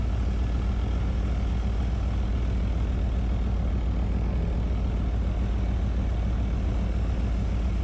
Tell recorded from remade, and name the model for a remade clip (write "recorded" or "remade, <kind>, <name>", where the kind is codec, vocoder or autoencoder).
recorded